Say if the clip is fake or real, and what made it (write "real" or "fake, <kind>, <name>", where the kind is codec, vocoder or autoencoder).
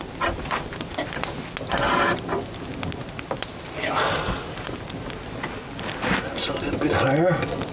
real